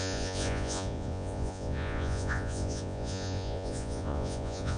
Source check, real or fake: fake